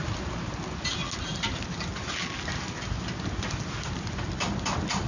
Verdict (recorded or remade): recorded